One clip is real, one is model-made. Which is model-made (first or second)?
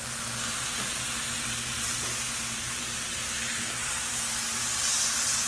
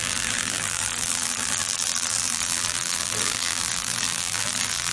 second